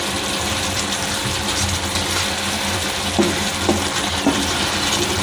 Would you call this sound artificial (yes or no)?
yes